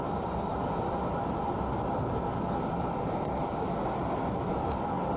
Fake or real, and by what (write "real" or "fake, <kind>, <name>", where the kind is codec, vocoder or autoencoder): real